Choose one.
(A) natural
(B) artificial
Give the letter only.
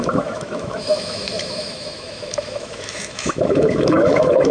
B